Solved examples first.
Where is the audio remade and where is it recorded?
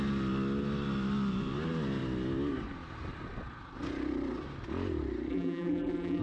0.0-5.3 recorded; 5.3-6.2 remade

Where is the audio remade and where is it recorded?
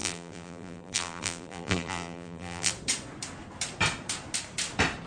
0.0-2.7 remade; 2.7-5.1 recorded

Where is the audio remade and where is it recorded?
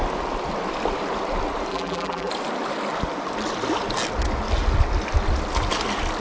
0.0-1.7 recorded; 1.7-2.3 remade; 2.3-6.2 recorded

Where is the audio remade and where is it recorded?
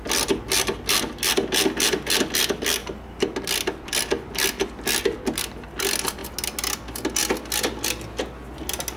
0.0-9.0 recorded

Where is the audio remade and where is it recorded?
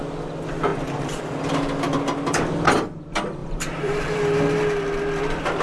0.0-0.7 recorded; 0.7-1.2 remade; 1.2-3.4 recorded; 3.4-4.2 remade; 4.2-5.6 recorded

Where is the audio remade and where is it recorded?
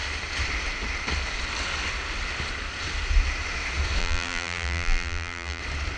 0.0-4.0 recorded; 4.0-5.6 remade; 5.6-6.0 recorded